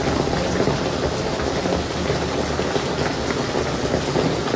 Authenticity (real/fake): real